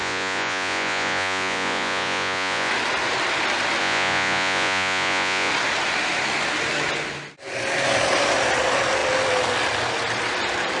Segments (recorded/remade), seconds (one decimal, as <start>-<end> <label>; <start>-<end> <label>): 0.0-2.7 remade; 2.7-3.8 recorded; 3.8-5.5 remade; 5.5-10.8 recorded

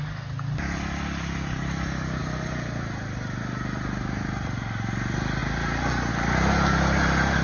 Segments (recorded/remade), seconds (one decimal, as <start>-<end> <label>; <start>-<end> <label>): 0.0-7.4 recorded

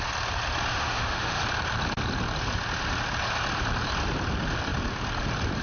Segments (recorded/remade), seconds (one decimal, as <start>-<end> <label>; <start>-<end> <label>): 0.0-0.7 recorded; 0.7-1.4 remade; 1.4-5.6 recorded